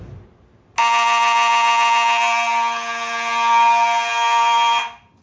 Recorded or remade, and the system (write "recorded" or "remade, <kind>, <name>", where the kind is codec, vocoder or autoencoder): recorded